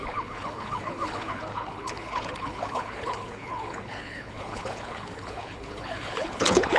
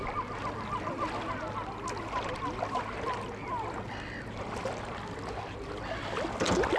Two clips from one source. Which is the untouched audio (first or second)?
second